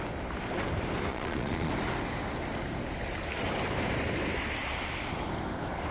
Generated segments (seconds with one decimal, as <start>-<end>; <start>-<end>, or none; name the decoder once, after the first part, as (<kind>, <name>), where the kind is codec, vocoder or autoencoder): 1.1-1.7 (vocoder, Vocos)